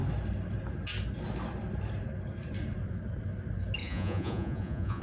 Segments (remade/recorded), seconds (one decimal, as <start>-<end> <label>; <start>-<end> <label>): 0.0-3.8 recorded; 3.8-5.0 remade